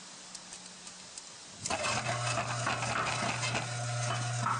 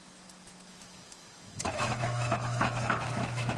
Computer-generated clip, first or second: second